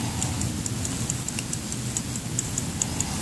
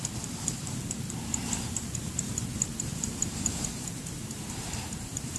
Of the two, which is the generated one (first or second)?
second